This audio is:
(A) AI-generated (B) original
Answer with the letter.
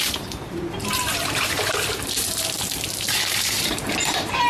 A